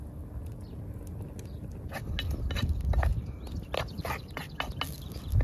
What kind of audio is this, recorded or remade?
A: recorded